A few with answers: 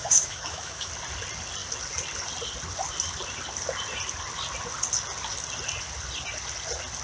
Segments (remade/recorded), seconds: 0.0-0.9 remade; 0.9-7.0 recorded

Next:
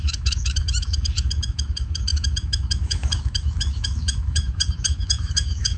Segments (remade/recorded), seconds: 0.0-5.8 remade

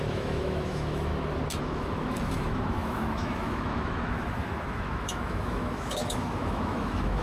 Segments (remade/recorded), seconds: 0.0-1.1 remade; 1.1-1.6 recorded; 1.6-7.2 remade

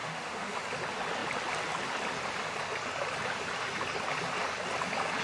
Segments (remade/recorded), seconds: 0.0-0.6 remade; 0.6-5.2 recorded